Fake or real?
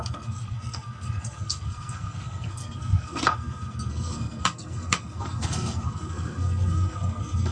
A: fake